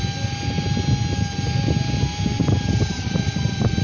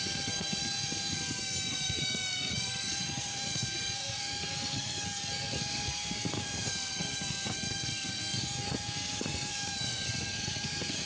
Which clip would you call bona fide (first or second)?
first